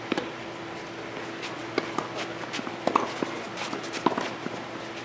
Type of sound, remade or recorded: recorded